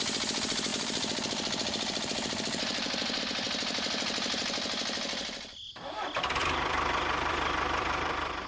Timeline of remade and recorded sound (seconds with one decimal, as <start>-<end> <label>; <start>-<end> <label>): 0.0-0.7 recorded; 0.7-3.2 remade; 3.2-6.4 recorded; 6.4-8.5 remade

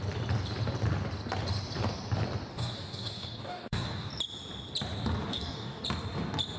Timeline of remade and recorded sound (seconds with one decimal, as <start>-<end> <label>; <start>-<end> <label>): 0.0-2.5 recorded; 2.5-4.1 remade; 4.1-5.3 recorded; 5.3-5.8 remade; 5.8-6.6 recorded

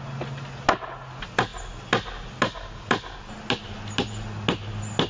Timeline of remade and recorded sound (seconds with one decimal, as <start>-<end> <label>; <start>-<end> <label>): 0.0-5.1 recorded

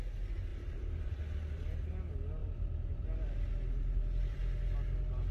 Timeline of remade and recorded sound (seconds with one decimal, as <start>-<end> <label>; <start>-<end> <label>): 0.0-0.5 recorded; 0.5-1.2 remade; 1.2-2.4 recorded; 2.4-3.3 remade; 3.3-3.8 recorded; 3.8-4.4 remade; 4.4-5.3 recorded

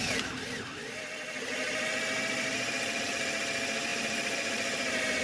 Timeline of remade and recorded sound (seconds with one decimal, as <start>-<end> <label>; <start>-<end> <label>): 0.0-2.5 recorded; 2.5-3.1 remade; 3.1-3.9 recorded; 3.9-5.2 remade

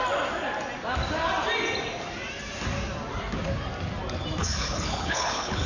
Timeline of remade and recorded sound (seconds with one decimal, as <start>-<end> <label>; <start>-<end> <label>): 0.0-4.4 recorded; 4.4-5.7 remade

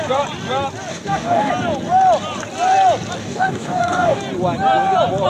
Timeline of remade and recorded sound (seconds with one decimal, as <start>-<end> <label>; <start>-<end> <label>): 0.0-0.9 recorded; 0.9-1.5 remade; 1.5-3.2 recorded; 3.2-4.2 remade; 4.2-5.3 recorded

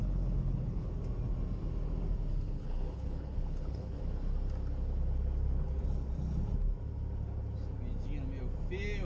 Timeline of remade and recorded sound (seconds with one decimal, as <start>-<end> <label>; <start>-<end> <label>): 0.0-1.0 remade; 1.0-2.3 recorded; 2.3-4.0 remade; 4.0-9.0 recorded